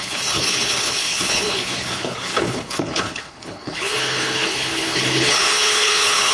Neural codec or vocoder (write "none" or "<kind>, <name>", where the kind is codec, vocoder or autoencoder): codec, HILCodec